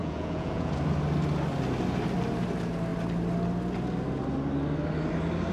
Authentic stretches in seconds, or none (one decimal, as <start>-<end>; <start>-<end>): 0.7-5.5